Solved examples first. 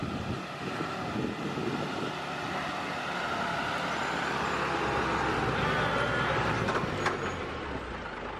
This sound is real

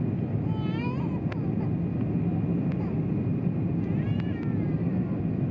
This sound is real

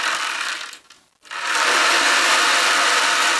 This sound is real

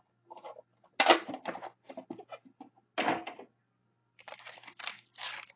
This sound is real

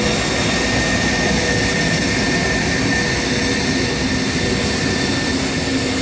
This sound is real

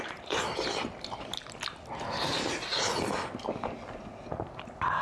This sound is real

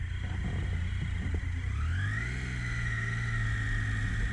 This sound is real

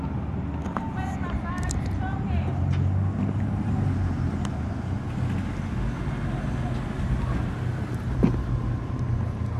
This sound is real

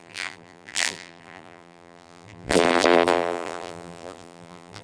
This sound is fake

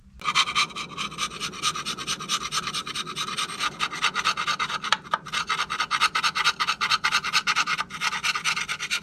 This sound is real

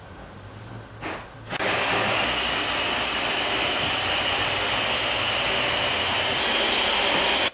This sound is real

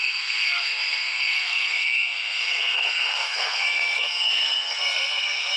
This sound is fake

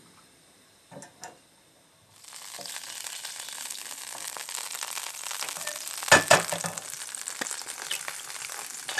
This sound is real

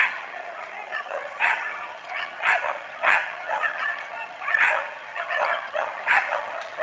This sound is fake